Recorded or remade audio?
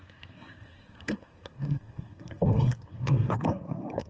remade